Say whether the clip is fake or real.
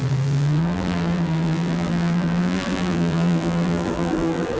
fake